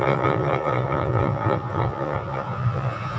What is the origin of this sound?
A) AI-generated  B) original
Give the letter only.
A